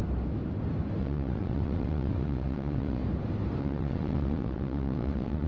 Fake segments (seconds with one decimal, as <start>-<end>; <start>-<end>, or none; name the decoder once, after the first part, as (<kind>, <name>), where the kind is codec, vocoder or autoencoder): 1.0-3.0 (vocoder, WaveNeXt); 3.6-5.5

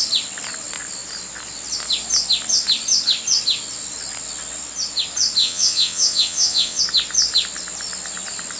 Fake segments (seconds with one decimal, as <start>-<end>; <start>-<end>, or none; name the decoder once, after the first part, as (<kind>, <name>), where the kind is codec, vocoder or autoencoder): 5.4-6.8 (vocoder, WaveNeXt)

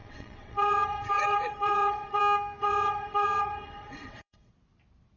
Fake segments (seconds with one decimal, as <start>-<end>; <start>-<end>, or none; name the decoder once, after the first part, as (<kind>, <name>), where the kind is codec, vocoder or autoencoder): 0.0-2.2 (vocoder, WaveNeXt); 2.6-4.5

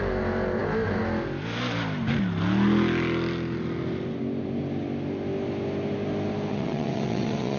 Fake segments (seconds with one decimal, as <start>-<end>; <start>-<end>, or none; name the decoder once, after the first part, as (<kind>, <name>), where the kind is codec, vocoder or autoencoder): 6.5-7.6 (vocoder, WaveNeXt)